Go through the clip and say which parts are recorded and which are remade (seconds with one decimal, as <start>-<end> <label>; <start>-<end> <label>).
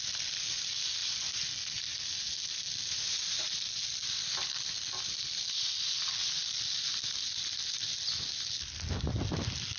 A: 0.0-1.0 recorded; 1.0-1.5 remade; 1.5-4.0 recorded; 4.0-5.1 remade; 5.1-9.8 recorded